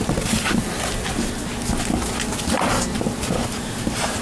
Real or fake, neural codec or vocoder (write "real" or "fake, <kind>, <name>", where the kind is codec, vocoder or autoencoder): real